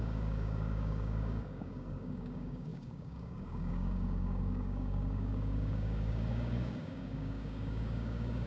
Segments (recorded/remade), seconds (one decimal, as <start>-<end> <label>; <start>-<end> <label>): 0.0-8.5 remade